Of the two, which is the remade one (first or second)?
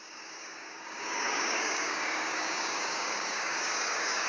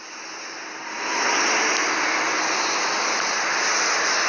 first